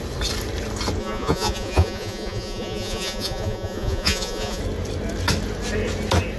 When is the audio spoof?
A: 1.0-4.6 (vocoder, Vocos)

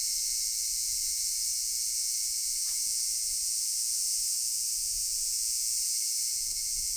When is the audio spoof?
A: 0.0-7.0 (vocoder, Vocos)

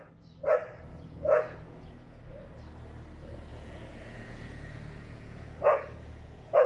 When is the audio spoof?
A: 0.9-2.2 (vocoder, Vocos); 3.5-6.7

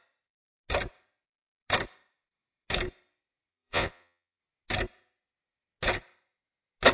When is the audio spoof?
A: 3.5-4.4 (vocoder, Vocos)